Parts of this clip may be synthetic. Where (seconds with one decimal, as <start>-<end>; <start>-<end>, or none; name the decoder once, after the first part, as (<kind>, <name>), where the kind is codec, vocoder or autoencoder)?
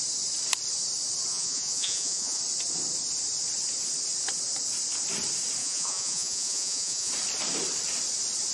1.3-2.4 (vocoder, Vocos); 5.6-7.1